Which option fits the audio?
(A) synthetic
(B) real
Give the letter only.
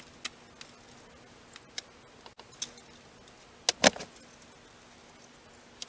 B